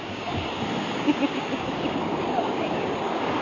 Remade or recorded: remade